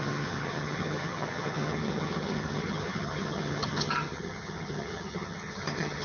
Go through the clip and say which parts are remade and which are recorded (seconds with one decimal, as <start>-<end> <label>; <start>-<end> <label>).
0.0-6.0 remade